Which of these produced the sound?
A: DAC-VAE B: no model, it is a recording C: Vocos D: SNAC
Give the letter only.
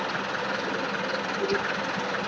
B